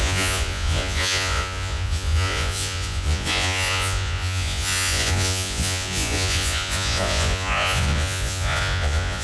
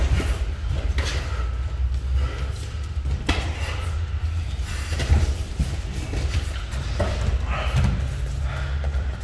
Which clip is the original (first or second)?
second